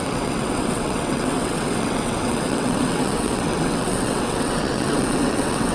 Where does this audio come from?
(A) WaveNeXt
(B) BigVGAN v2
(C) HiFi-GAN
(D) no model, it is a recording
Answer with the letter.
A